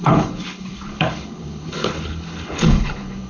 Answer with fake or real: fake